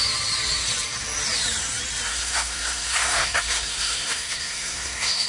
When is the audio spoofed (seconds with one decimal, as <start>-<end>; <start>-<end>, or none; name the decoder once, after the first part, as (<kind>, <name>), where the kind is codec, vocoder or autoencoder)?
2.1-5.3 (codec, SNAC)